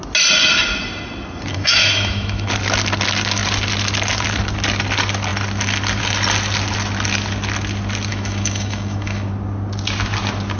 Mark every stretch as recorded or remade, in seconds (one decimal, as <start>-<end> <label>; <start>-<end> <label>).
0.0-1.5 recorded; 1.5-2.5 remade; 2.5-8.1 recorded; 8.1-9.3 remade; 9.3-10.6 recorded